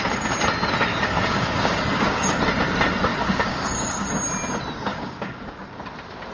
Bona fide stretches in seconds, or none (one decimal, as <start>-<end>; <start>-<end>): 0.0-0.9; 2.4-3.1; 4.1-4.9; 5.7-6.3